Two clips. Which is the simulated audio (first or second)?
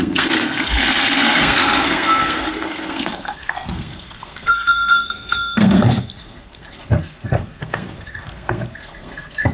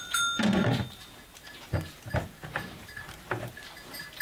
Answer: first